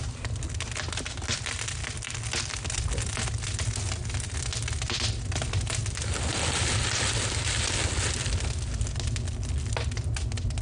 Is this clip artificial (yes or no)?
no